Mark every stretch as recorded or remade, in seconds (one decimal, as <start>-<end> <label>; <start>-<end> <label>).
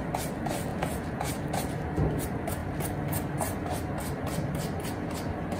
0.0-0.7 recorded; 0.7-1.3 remade; 1.3-5.6 recorded